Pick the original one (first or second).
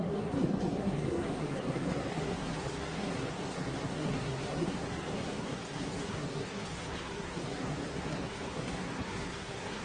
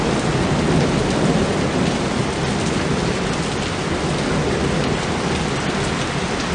second